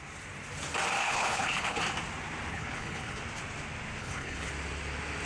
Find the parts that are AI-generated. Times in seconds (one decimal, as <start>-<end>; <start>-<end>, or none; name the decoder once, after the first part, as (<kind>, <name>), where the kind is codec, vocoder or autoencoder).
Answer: 1.0-1.8 (codec, HILCodec); 2.5-3.2; 4.0-4.5